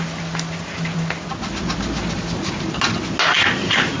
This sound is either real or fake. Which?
real